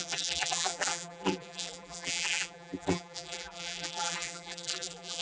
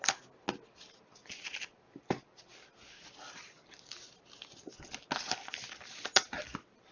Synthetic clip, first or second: first